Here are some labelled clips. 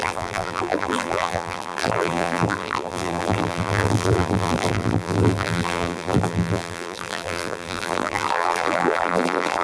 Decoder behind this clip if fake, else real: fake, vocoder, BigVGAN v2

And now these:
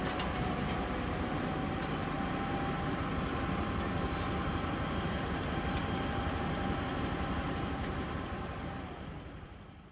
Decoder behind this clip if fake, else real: fake, vocoder, BigVGAN v2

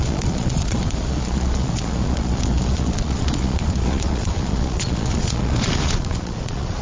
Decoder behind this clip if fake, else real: fake, vocoder, Vocos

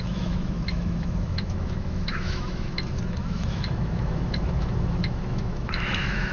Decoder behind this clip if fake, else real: fake, autoencoder, DAC-VAE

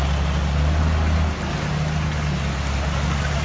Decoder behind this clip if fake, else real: real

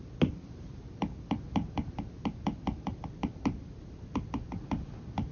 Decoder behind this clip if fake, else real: real